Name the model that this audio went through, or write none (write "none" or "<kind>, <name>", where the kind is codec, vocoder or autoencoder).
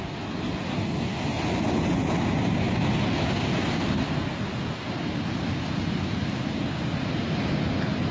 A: none